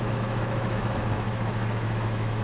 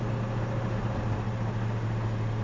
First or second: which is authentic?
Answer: second